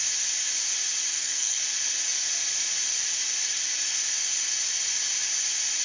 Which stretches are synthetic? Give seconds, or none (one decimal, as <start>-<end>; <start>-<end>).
1.1-1.6